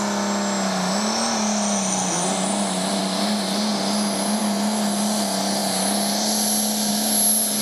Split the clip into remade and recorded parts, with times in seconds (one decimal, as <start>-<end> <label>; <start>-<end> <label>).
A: 0.0-7.6 recorded

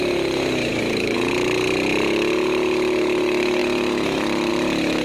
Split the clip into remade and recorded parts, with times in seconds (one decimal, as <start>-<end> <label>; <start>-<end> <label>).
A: 0.0-0.7 recorded; 0.7-1.3 remade; 1.3-5.0 recorded